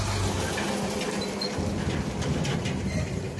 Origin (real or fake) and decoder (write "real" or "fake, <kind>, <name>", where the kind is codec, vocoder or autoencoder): real